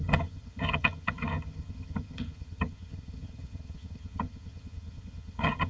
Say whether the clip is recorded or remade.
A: remade